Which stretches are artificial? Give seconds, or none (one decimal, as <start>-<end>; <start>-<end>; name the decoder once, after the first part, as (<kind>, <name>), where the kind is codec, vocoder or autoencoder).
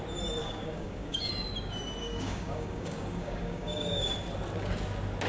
0.4-1.3 (codec, DAC); 2.0-4.1